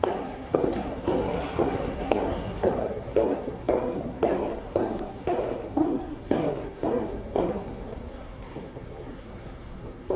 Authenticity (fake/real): fake